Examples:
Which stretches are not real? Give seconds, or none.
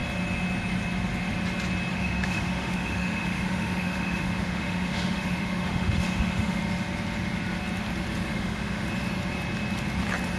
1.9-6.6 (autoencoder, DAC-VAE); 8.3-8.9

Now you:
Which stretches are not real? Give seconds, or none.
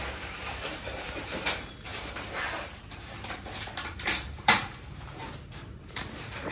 0.0-6.5 (vocoder, BigVGAN v2)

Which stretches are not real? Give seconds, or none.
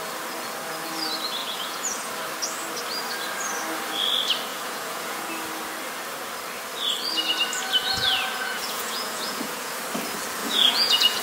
1.4-2.1 (vocoder, Vocos); 4.5-5.3; 7.8-9.7; 10.4-11.2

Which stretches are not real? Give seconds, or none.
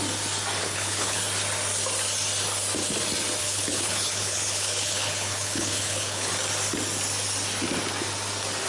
0.6-1.2 (codec, HILCodec); 3.4-6.3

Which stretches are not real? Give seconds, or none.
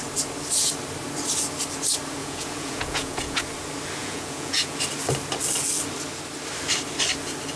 2.2-3.4 (vocoder, Vocos); 4.0-4.8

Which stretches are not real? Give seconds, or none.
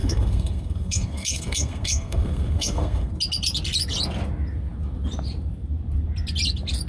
0.0-3.1 (codec, SNAC)